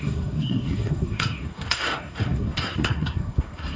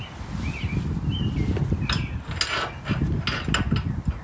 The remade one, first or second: first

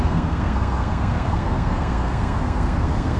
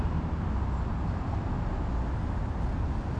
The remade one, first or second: first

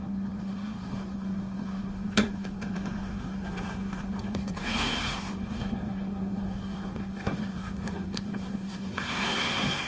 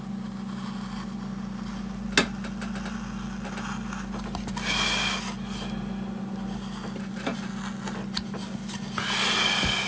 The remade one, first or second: first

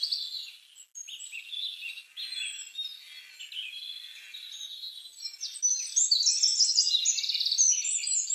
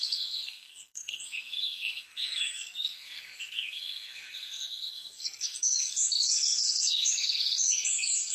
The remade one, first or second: second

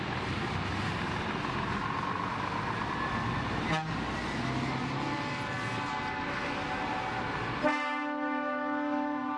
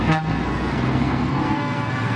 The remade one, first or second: second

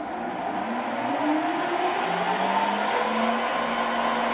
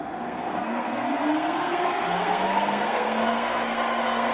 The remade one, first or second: second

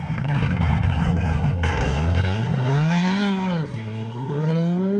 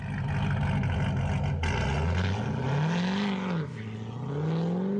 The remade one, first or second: first